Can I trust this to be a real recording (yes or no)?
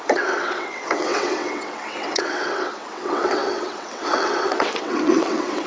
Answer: no